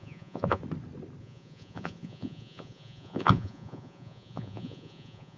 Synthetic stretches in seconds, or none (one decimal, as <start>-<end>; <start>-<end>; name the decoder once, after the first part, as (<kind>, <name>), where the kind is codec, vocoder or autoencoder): 0.0-0.6 (vocoder, Vocos); 1.2-5.4